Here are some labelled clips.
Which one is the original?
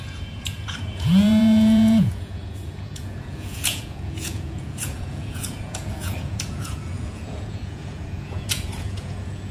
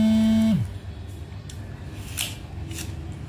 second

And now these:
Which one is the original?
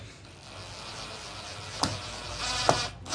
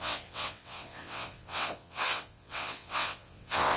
first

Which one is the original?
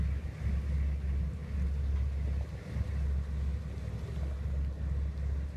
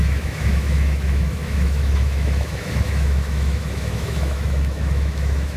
first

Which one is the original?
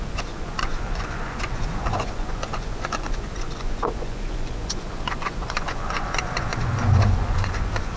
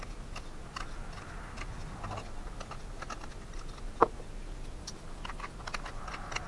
second